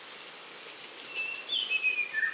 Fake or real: real